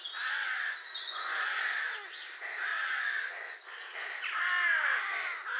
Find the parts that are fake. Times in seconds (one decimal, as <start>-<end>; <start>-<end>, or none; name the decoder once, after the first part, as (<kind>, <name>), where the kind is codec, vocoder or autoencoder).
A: 1.0-1.6 (vocoder, Vocos); 2.7-3.6